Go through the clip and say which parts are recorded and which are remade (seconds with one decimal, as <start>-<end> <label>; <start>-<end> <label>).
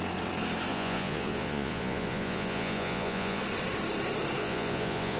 0.0-0.7 recorded; 0.7-3.4 remade; 3.4-4.4 recorded; 4.4-5.2 remade